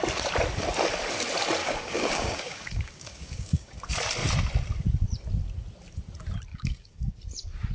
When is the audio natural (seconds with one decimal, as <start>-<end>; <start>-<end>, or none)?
0.0-1.6; 3.8-6.5; 7.2-7.7